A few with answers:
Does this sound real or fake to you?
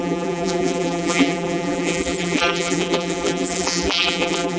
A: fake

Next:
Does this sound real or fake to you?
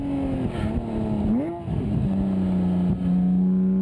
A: real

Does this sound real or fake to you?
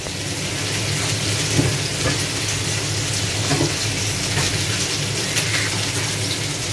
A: real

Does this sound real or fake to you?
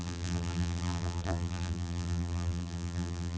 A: fake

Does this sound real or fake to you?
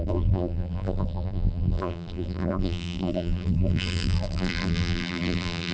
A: fake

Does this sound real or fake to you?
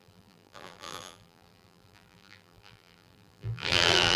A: fake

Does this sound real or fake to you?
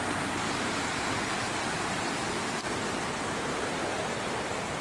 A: fake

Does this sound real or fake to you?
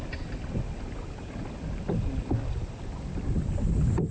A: real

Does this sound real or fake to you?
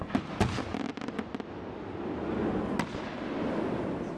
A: real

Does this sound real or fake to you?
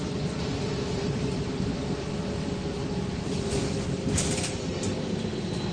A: fake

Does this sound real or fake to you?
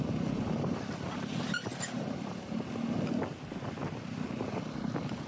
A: real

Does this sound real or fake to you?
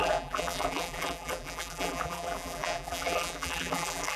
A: fake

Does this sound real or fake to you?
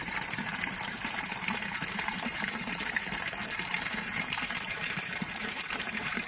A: fake